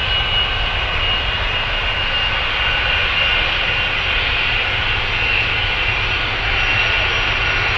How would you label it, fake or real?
real